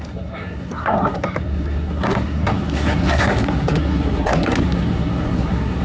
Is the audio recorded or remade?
remade